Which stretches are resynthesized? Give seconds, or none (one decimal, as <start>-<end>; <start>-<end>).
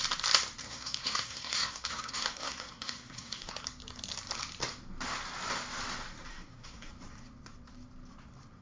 0.6-3.5; 6.3-6.9